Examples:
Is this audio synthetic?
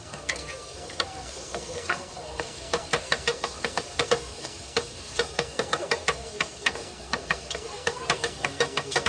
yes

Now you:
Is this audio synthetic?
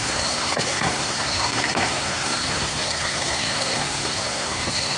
yes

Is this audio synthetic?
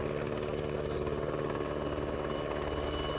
no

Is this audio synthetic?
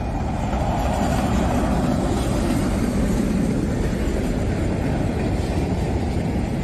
no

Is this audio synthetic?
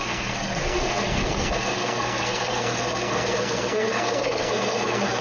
yes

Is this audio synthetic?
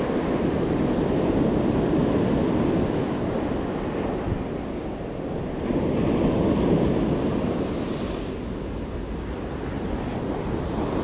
no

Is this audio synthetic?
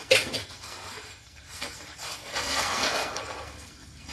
yes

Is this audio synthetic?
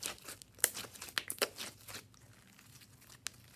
no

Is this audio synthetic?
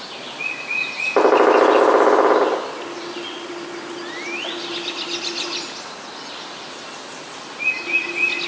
no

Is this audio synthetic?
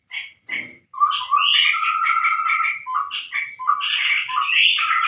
no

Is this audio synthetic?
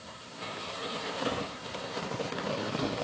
yes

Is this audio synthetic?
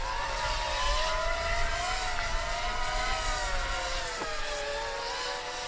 no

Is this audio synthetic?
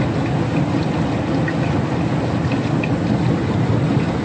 no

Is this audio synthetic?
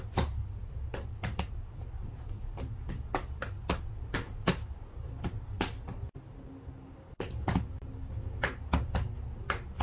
no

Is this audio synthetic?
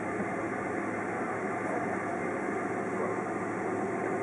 no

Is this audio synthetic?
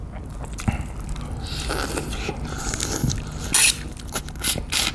no